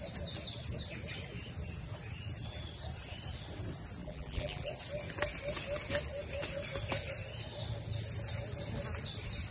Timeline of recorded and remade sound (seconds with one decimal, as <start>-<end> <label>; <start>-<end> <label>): 0.0-4.0 recorded; 4.0-4.7 remade; 4.7-9.5 recorded